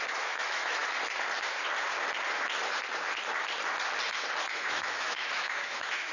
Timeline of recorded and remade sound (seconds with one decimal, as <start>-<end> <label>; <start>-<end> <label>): 0.0-0.8 remade; 0.8-4.5 recorded; 4.5-6.1 remade